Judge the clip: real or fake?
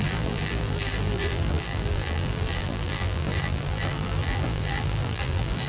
fake